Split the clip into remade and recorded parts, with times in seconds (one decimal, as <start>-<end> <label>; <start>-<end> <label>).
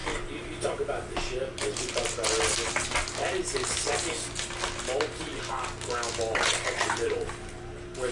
0.0-8.1 recorded